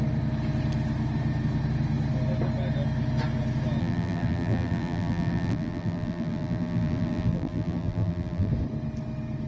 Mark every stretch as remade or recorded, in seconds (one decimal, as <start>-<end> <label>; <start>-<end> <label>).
0.0-3.8 recorded; 3.8-8.5 remade; 8.5-9.5 recorded